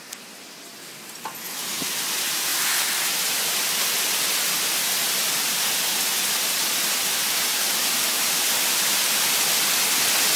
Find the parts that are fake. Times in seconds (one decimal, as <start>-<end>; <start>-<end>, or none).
none